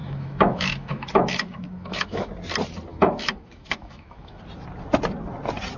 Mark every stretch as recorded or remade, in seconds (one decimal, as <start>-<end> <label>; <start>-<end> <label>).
0.0-2.3 remade; 2.3-2.9 recorded; 2.9-4.4 remade; 4.4-5.8 recorded